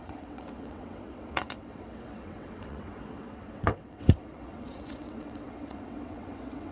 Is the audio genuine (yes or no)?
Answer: no